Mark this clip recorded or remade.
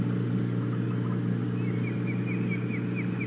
recorded